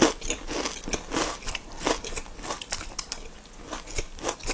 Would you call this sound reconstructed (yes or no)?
no